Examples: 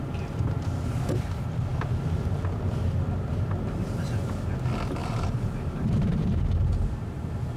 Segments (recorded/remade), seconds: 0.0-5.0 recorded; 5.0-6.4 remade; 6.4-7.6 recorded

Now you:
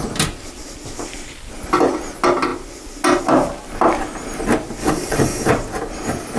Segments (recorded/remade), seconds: 0.0-4.8 recorded; 4.8-5.5 remade; 5.5-6.4 recorded